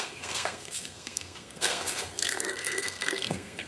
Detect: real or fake fake